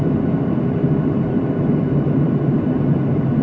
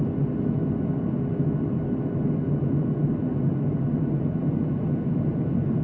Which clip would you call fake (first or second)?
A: first